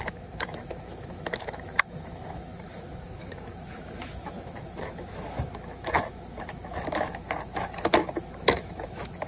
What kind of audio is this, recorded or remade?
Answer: remade